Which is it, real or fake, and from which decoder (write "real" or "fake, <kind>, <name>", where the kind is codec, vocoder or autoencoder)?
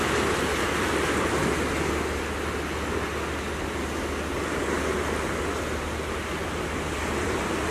real